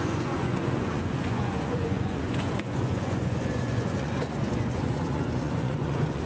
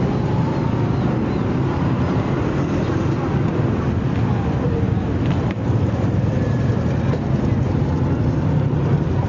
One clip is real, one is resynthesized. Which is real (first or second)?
second